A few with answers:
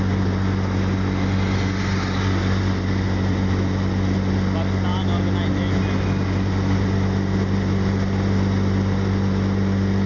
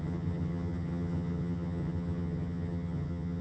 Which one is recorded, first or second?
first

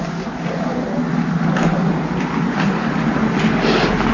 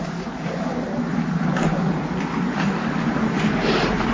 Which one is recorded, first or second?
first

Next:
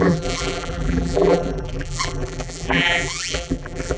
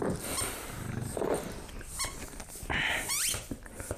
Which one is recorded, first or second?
second